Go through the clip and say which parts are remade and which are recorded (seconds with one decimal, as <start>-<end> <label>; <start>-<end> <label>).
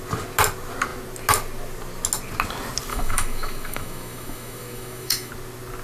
0.0-2.9 recorded; 2.9-5.3 remade; 5.3-5.8 recorded